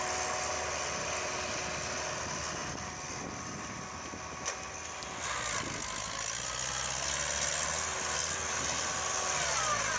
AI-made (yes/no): no